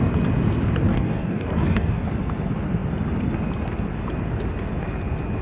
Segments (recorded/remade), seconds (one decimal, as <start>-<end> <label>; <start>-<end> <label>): 0.0-0.9 recorded; 0.9-2.1 remade; 2.1-5.4 recorded